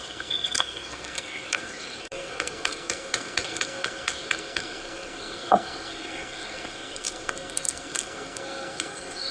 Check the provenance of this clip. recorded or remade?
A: remade